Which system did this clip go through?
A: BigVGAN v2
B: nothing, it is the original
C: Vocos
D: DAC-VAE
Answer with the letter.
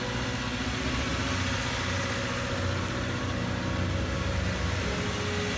B